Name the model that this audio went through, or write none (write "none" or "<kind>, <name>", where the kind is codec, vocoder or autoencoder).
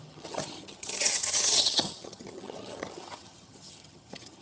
vocoder, HiFi-GAN